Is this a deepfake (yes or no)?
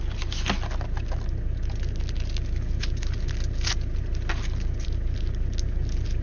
no